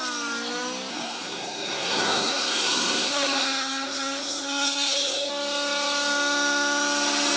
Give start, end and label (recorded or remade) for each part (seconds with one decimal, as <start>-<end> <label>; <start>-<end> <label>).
0.0-0.9 recorded; 0.9-5.3 remade; 5.3-7.4 recorded